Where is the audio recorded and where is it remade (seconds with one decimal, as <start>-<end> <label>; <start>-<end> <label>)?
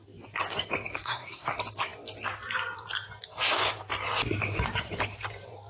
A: 0.0-0.9 recorded; 0.9-1.5 remade; 1.5-5.7 recorded